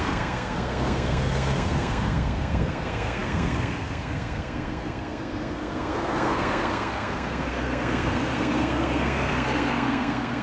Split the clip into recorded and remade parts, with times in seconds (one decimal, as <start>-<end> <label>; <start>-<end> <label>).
0.0-10.4 remade